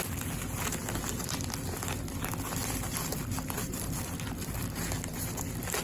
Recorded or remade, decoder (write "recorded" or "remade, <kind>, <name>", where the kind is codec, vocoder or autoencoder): recorded